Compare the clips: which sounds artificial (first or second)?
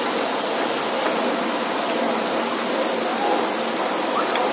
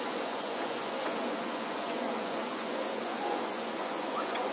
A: second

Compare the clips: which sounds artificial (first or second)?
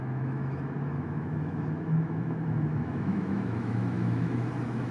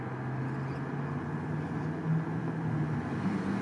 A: first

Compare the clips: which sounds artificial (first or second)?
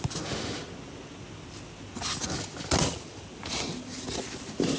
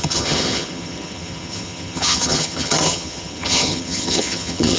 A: second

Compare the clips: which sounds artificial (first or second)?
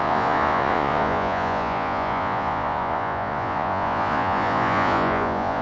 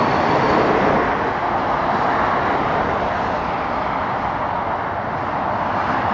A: first